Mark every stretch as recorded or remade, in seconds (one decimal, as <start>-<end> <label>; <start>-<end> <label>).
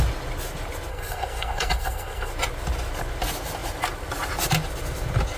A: 0.0-0.9 recorded; 0.9-2.3 remade; 2.3-5.4 recorded